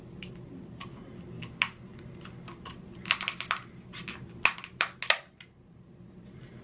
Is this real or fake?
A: real